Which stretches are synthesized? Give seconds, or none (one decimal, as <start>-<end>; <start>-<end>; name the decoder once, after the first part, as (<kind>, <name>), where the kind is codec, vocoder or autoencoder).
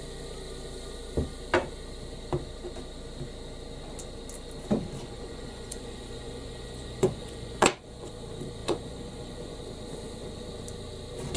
5.0-8.1 (vocoder, Vocos); 8.6-9.6